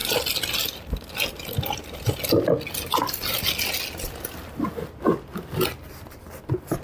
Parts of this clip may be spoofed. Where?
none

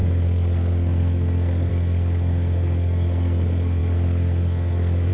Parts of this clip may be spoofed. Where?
0.0-5.1

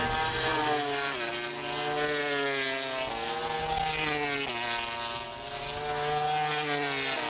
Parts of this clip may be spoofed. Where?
none

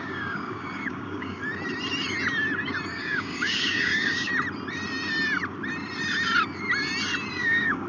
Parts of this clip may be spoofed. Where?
0.0-1.4; 2.9-4.3; 7.3-7.9

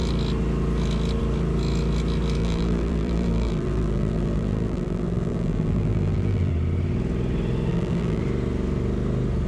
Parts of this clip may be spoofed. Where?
2.4-6.5; 7.7-8.2